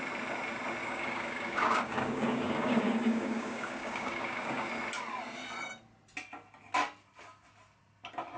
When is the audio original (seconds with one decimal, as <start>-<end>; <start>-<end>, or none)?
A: 0.0-0.8; 4.7-8.4